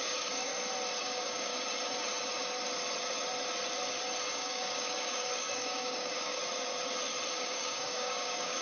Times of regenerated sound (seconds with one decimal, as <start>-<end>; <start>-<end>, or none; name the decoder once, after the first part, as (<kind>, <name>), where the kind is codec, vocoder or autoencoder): 0.0-0.5 (codec, DAC); 1.0-1.5; 4.3-6.4; 7.3-8.6